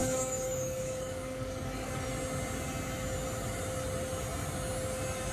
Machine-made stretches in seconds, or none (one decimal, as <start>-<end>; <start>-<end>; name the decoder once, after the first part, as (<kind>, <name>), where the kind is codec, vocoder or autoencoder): 0.0-2.0 (codec, DAC)